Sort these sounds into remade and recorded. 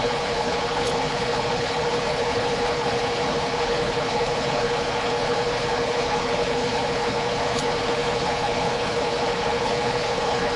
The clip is remade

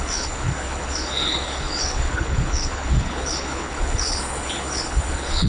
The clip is remade